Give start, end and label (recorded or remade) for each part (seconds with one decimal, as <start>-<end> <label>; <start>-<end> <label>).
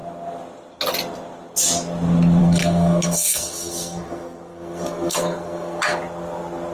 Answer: 0.0-2.4 recorded; 2.4-6.0 remade; 6.0-6.7 recorded